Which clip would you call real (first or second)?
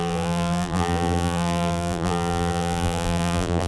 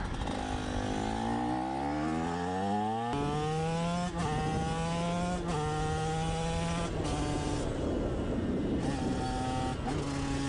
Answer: second